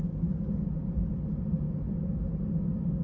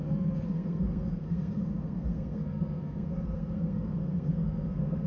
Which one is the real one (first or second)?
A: first